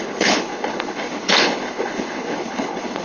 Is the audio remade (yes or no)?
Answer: yes